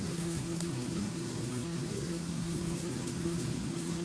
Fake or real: fake